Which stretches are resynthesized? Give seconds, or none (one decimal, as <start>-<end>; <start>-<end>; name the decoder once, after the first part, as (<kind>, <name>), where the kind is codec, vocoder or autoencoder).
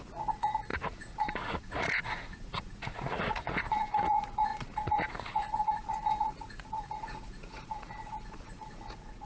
0.0-9.3 (vocoder, Vocos)